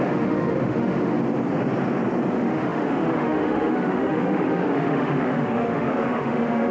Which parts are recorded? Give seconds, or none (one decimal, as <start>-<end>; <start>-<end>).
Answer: 1.1-2.3